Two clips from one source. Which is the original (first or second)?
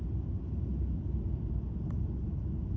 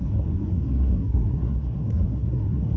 first